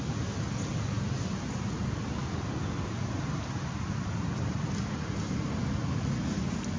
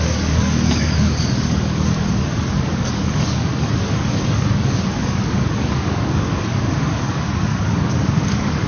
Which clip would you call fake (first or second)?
second